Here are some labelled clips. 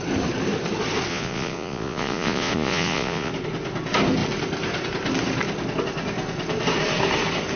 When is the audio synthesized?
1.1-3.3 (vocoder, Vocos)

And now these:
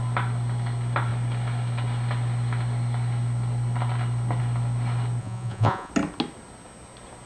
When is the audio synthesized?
5.2-5.9 (vocoder, Vocos)

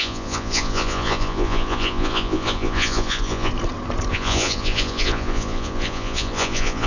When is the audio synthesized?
0.0-3.5 (vocoder, Vocos); 4.1-6.9

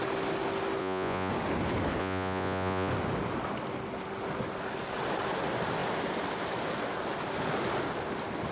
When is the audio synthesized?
0.8-1.3 (vocoder, Vocos); 2.0-2.9

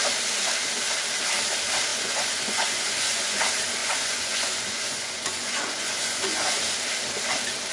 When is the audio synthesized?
1.9-3.4 (vocoder, Vocos); 3.8-6.7